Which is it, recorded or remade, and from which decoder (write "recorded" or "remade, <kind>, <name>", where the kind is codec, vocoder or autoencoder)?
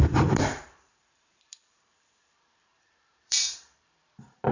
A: remade, vocoder, BigVGAN v2